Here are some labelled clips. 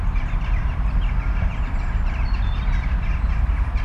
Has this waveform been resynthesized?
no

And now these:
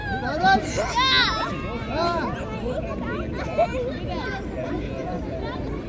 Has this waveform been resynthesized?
no